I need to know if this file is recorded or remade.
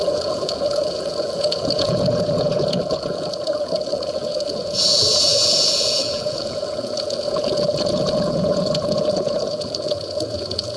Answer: remade